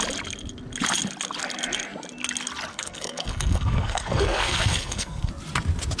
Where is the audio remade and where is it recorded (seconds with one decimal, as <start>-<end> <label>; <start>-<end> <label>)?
0.0-2.7 recorded; 2.7-5.3 remade; 5.3-6.0 recorded